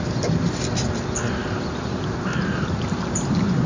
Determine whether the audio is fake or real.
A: real